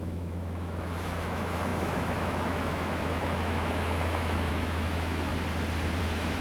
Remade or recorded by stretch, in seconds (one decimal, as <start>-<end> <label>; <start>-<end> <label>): 0.0-5.3 remade; 5.3-6.0 recorded; 6.0-6.4 remade